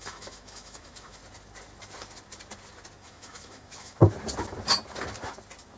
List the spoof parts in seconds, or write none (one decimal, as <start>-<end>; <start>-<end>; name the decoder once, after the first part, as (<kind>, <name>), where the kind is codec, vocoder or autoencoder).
0.0-1.2 (autoencoder, DAC-VAE); 3.0-4.0